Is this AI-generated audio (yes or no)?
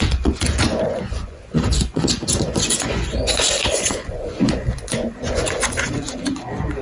yes